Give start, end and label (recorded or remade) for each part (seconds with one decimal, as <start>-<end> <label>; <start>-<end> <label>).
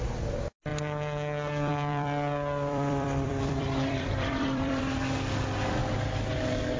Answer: 0.0-0.7 recorded; 0.7-4.8 remade; 4.8-6.8 recorded